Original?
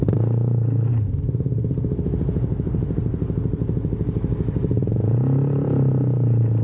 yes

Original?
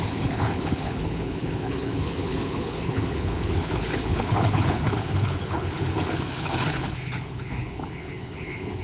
no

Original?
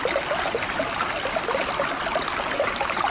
yes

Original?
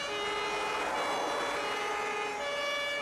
yes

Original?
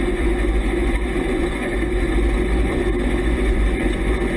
no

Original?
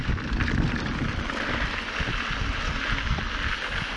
yes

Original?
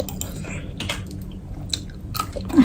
yes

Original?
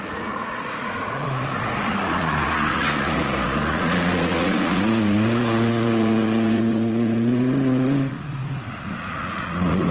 no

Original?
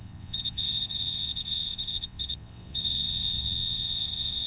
no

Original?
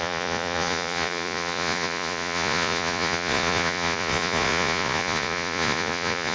no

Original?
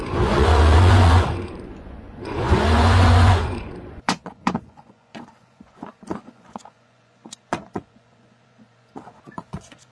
no